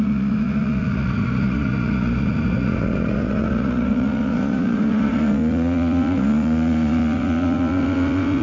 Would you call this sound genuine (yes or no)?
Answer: no